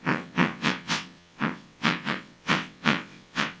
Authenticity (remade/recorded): remade